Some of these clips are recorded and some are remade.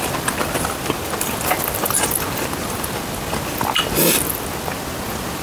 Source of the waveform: recorded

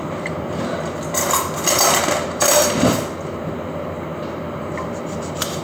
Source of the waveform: recorded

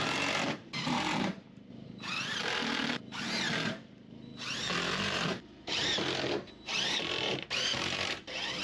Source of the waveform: remade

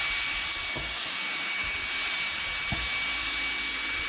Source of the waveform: recorded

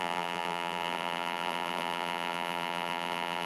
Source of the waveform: remade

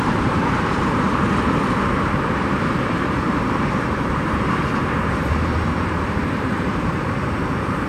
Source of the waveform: remade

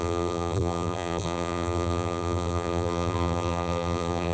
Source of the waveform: remade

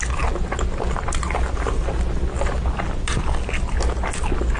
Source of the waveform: recorded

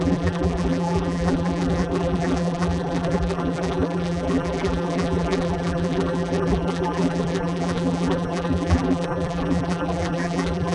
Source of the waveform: remade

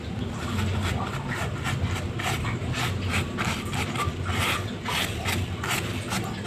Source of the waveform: recorded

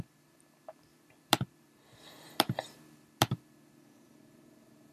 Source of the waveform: remade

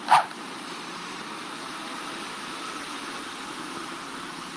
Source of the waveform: remade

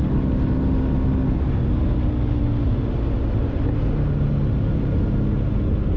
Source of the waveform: recorded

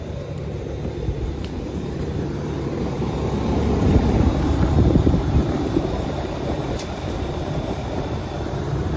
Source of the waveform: remade